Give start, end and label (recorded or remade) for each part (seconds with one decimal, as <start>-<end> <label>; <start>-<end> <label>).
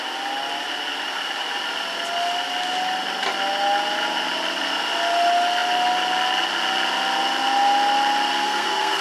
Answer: 0.0-8.3 recorded; 8.3-9.0 remade